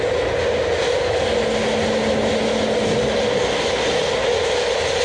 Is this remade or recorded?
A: recorded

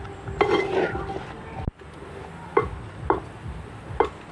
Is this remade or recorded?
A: recorded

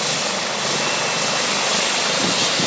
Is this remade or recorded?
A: recorded